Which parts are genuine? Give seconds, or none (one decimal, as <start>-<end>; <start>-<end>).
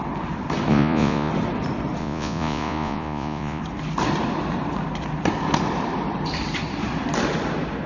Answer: 0.0-0.7; 1.3-2.0; 3.6-7.9